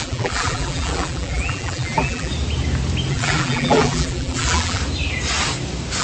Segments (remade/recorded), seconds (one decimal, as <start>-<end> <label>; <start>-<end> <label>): 0.0-2.3 remade; 2.3-3.1 recorded; 3.1-4.8 remade; 4.8-6.0 recorded